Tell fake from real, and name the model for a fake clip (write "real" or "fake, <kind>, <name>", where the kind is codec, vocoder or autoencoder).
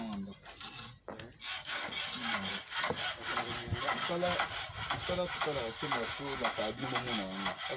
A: real